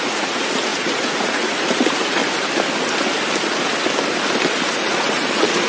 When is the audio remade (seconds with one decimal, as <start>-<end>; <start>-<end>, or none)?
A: 0.0-2.2; 4.9-5.7